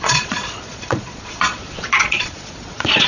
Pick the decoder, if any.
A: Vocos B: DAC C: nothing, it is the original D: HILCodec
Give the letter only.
A